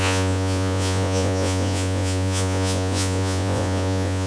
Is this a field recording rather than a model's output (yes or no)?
no